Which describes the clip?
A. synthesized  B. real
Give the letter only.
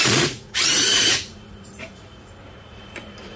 A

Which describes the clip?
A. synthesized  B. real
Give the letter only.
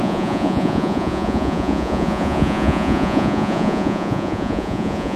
A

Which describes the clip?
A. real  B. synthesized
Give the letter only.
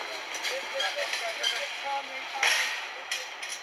A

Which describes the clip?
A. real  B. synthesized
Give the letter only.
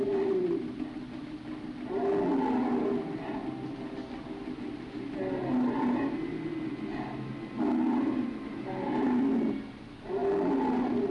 A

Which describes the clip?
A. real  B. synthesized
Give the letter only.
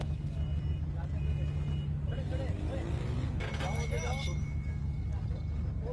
A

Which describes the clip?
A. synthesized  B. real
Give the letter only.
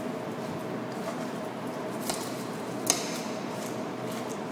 B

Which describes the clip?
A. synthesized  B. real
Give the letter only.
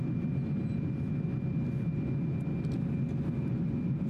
B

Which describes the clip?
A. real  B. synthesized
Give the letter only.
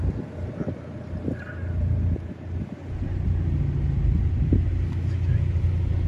A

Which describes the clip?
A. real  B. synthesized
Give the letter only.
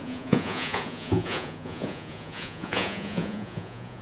B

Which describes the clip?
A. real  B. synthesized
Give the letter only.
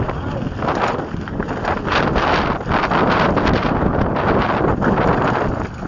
A